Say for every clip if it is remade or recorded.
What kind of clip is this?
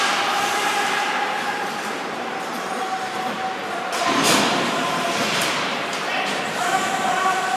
recorded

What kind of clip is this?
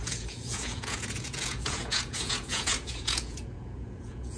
remade